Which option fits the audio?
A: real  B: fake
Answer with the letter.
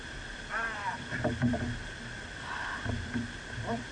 B